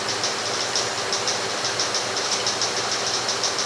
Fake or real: real